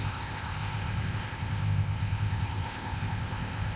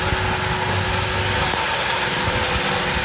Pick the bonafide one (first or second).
second